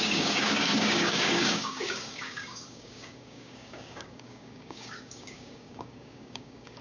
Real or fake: fake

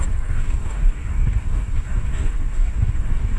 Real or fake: fake